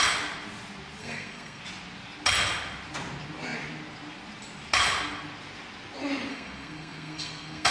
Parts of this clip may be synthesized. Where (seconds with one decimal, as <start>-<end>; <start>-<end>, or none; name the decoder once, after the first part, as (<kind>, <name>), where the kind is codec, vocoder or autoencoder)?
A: 1.0-1.6 (codec, SNAC); 6.3-7.7